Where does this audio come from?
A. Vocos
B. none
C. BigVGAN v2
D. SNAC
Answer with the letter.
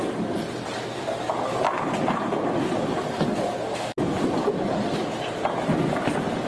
B